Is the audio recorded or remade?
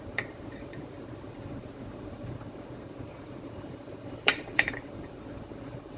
remade